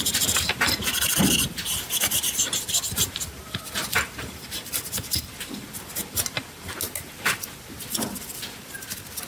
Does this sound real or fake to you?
real